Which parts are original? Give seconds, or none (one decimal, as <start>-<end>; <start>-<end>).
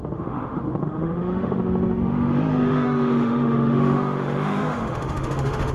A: none